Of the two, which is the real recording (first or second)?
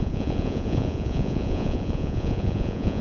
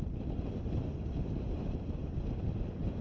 second